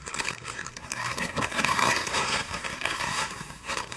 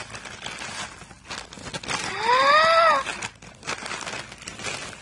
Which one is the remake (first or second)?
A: first